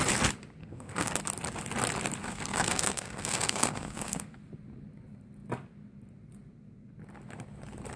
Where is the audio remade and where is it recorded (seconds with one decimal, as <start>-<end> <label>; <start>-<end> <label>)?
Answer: 0.0-0.6 recorded; 0.6-1.2 remade; 1.2-2.2 recorded; 2.2-4.4 remade; 4.4-8.0 recorded